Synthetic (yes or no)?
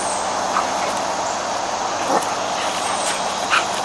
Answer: no